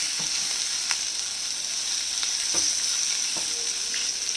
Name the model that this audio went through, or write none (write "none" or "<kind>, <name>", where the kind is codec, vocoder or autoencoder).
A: none